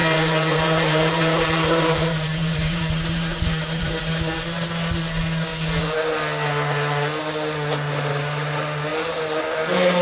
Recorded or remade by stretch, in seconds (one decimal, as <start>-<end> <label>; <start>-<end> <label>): 0.0-4.0 remade; 4.0-8.9 recorded; 8.9-9.4 remade; 9.4-10.0 recorded

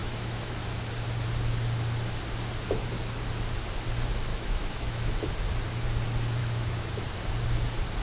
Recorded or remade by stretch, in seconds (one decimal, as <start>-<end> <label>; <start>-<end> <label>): 0.0-0.5 remade; 0.5-4.3 recorded; 4.3-5.1 remade; 5.1-6.4 recorded; 6.4-7.0 remade; 7.0-8.0 recorded